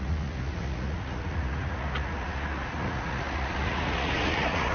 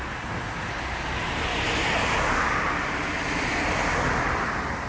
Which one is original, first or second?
second